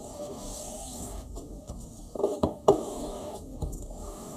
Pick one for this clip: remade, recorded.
remade